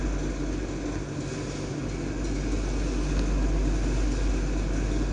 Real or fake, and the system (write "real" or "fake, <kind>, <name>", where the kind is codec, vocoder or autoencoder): real